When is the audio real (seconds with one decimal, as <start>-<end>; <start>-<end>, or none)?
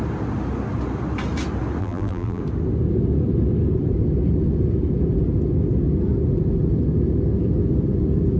0.0-1.8; 2.4-8.4